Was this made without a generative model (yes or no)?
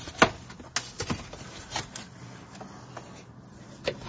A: yes